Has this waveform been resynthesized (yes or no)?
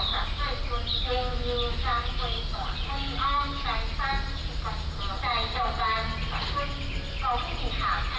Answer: no